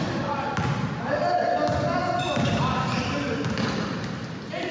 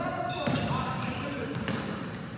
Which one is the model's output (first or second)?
second